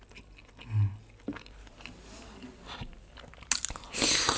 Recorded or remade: recorded